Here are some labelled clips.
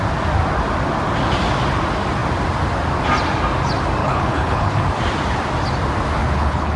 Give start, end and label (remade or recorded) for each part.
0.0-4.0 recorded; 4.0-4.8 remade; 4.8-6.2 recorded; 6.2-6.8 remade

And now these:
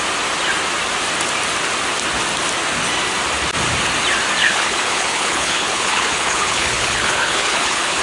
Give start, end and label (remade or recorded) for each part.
0.0-4.4 recorded; 4.4-8.0 remade

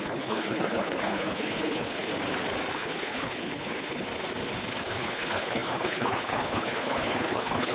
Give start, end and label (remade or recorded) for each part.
0.0-2.1 remade; 2.1-2.7 recorded; 2.7-4.0 remade; 4.0-4.8 recorded; 4.8-7.7 remade